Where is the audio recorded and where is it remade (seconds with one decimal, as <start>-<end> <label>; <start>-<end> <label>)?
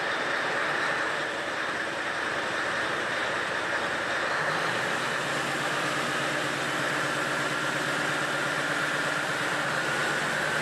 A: 0.0-10.6 recorded